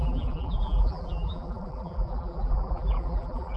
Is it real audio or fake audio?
fake